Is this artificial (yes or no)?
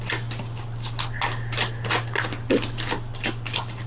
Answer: no